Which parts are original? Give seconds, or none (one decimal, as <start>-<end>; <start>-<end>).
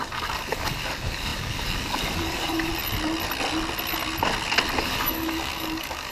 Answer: 2.7-4.8